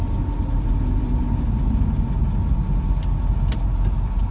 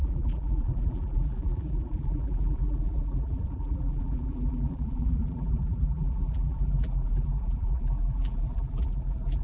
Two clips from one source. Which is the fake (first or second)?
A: second